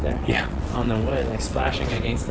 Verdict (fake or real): fake